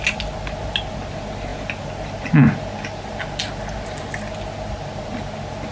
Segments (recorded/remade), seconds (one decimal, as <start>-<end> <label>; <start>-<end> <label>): 0.0-5.7 recorded